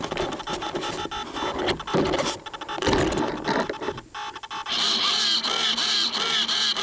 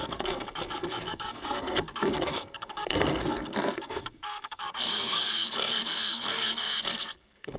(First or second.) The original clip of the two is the first